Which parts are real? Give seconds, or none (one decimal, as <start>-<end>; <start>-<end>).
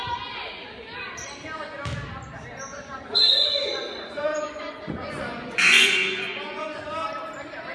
0.0-2.7; 6.8-7.7